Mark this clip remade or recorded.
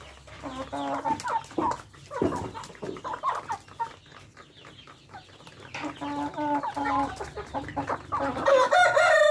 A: recorded